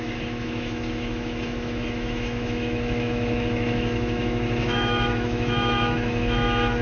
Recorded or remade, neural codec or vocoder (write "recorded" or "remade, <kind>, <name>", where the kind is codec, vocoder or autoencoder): remade, autoencoder, DAC-VAE